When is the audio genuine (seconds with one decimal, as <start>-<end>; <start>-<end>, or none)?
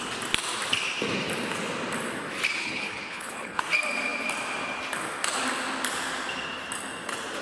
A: 0.0-2.6; 3.6-7.4